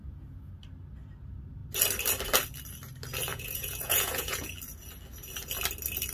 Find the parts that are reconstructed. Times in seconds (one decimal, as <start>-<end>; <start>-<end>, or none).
0.0-0.5; 3.3-4.5